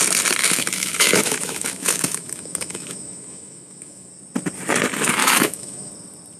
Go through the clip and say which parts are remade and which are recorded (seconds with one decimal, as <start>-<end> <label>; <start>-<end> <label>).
0.0-0.4 recorded; 0.4-4.1 remade; 4.1-5.2 recorded; 5.2-5.9 remade; 5.9-6.4 recorded